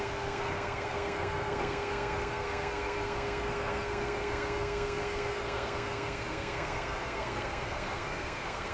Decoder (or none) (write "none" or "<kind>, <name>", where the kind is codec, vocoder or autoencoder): codec, SNAC